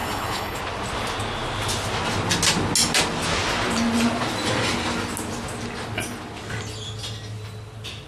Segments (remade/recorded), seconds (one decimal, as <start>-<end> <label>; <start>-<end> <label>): 0.0-0.6 remade; 0.6-8.1 recorded